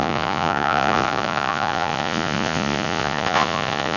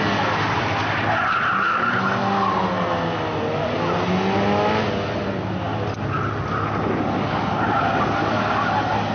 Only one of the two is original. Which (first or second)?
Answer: second